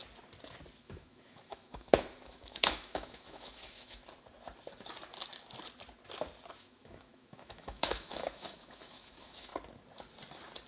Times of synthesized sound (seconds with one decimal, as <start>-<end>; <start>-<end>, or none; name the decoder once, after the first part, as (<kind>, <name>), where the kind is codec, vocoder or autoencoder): 0.8-4.0 (autoencoder, DAC-VAE); 6.5-9.5